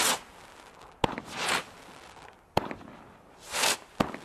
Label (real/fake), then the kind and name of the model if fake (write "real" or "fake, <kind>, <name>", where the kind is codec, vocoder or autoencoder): real